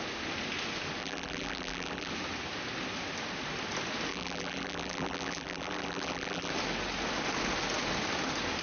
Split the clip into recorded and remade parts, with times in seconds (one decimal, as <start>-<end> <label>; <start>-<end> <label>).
0.0-1.0 recorded; 1.0-2.1 remade; 2.1-4.1 recorded; 4.1-6.5 remade; 6.5-8.6 recorded